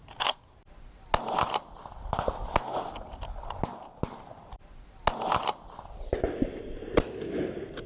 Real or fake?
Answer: real